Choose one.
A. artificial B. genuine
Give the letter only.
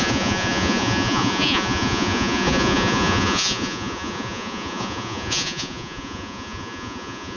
A